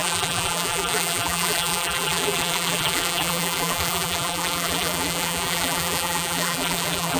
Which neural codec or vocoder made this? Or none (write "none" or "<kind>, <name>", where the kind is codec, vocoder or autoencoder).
vocoder, BigVGAN v2